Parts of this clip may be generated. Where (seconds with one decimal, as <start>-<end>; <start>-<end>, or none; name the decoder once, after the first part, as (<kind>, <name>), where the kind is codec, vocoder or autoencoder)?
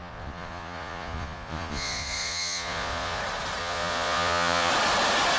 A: 0.0-3.2 (vocoder, Vocos); 3.6-4.7